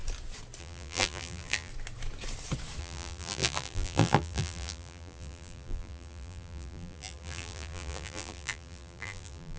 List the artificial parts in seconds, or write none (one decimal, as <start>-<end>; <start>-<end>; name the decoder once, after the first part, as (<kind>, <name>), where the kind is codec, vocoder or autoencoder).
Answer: 0.6-1.7 (vocoder, BigVGAN v2); 2.8-9.6